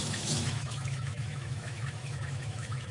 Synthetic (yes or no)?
yes